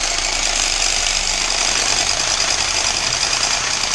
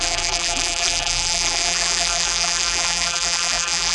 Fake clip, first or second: second